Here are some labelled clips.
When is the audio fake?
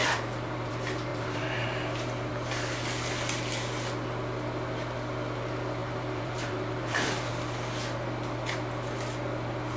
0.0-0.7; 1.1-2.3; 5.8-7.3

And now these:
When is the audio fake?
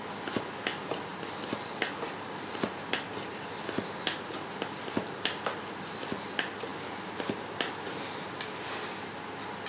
none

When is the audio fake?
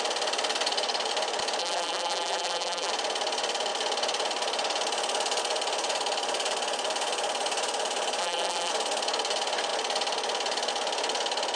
1.6-2.9; 8.2-8.7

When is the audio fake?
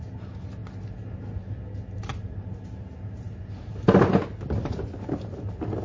0.0-0.6; 1.4-2.1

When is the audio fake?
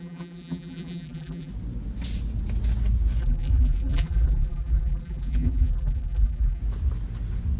0.0-1.5; 3.2-6.6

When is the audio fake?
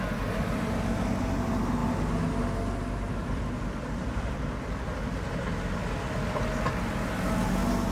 3.2-5.2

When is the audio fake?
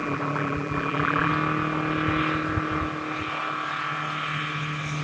0.0-1.3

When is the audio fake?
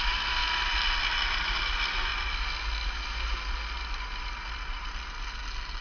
0.0-0.4; 1.0-2.1